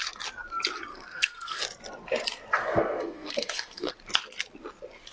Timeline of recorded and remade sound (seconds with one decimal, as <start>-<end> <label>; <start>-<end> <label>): 0.0-0.9 recorded; 0.9-1.6 remade; 1.6-2.6 recorded; 2.6-3.9 remade; 3.9-5.1 recorded